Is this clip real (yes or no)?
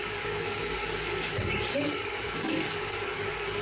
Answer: no